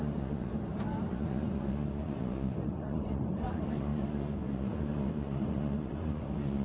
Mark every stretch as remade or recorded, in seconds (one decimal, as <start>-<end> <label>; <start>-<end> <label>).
0.0-0.5 remade; 0.5-1.1 recorded; 1.1-6.6 remade